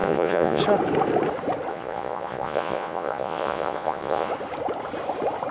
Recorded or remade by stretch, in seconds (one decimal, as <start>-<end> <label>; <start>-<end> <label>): 0.0-0.6 remade; 0.6-1.7 recorded; 1.7-4.3 remade; 4.3-5.5 recorded